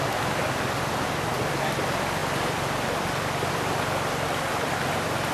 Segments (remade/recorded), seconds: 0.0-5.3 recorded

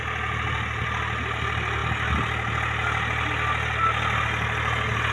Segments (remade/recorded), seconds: 0.0-5.1 recorded